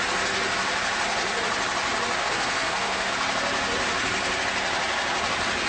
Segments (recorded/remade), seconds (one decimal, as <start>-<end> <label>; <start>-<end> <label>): 0.0-2.2 recorded; 2.2-3.1 remade; 3.1-5.7 recorded